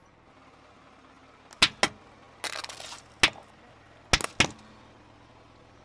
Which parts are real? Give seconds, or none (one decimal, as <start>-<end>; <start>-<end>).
0.0-5.8